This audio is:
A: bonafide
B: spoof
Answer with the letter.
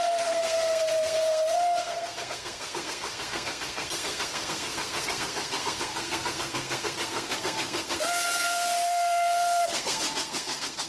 B